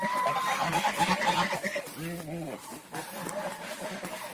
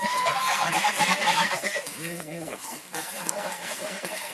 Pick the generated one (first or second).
second